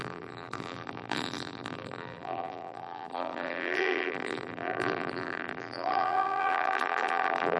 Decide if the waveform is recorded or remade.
remade